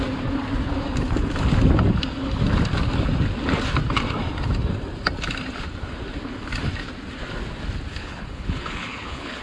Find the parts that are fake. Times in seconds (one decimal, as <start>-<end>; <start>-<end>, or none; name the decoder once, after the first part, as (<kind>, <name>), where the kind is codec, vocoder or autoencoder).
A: 7.9-9.4 (codec, HILCodec)